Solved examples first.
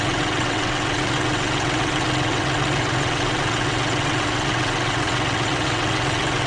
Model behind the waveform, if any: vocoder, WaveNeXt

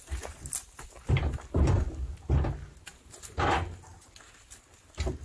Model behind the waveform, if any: none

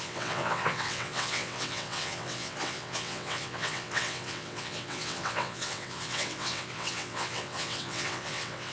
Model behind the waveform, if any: vocoder, WaveNeXt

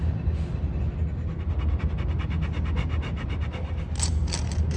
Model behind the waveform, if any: none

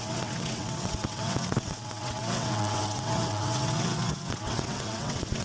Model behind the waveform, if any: vocoder, WaveNeXt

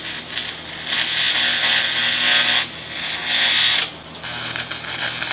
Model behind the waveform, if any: none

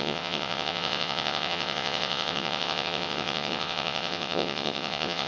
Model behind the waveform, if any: vocoder, WaveNeXt